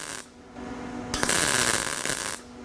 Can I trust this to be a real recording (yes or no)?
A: yes